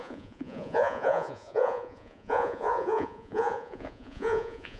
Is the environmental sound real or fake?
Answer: fake